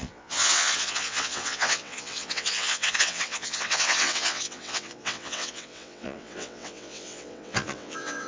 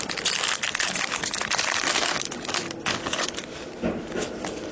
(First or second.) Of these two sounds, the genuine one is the second